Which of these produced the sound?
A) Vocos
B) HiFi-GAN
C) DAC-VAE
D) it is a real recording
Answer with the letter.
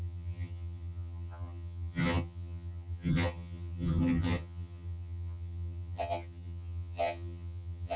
B